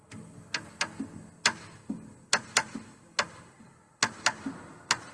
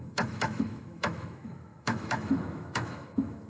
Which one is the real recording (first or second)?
first